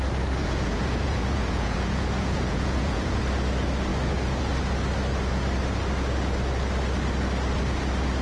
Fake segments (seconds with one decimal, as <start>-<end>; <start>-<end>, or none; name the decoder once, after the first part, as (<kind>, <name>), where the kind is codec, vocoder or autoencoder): 0.4-3.2 (vocoder, Vocos)